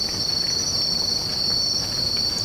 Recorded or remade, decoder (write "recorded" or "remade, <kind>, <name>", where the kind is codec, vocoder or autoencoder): recorded